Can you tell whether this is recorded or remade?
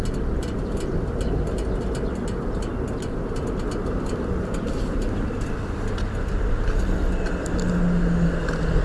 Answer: recorded